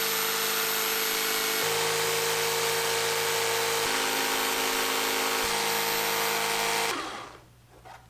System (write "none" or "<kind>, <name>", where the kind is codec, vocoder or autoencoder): none